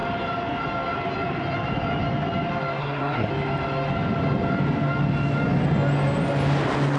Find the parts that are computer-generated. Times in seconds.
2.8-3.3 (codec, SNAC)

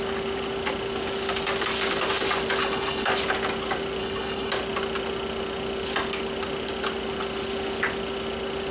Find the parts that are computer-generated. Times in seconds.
2.6-3.1 (codec, HILCodec); 4.0-4.5

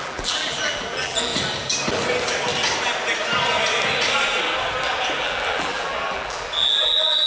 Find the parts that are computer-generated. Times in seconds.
0.0-1.3 (vocoder, BigVGAN v2); 5.2-7.3

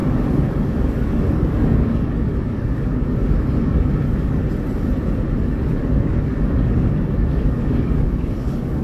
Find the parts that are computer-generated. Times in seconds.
0.0-4.4 (codec, DAC); 5.4-8.8

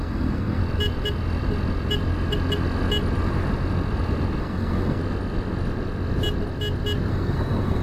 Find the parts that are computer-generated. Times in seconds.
0.0-0.6 (codec, SNAC); 4.4-5.0; 7.1-7.8

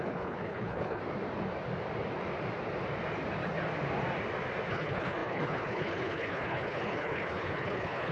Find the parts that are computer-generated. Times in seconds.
0.0-1.0 (codec, HILCodec); 4.7-8.1